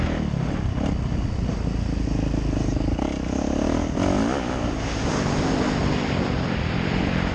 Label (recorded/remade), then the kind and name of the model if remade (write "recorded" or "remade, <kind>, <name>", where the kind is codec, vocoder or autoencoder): recorded